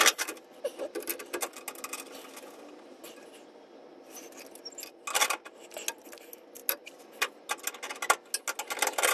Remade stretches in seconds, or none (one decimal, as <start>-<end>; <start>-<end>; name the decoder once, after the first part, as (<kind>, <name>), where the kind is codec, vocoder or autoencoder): none

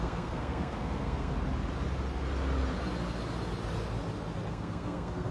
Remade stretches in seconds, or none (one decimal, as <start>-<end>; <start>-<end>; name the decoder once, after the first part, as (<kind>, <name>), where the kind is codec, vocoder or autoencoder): 0.0-1.3 (codec, SNAC); 4.5-5.3

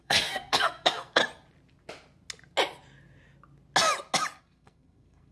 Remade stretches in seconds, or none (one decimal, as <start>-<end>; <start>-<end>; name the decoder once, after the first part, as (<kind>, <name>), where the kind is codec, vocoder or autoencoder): 0.0-1.2 (codec, SNAC); 4.4-5.3